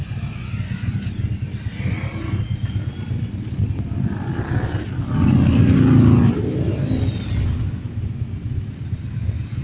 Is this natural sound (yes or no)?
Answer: yes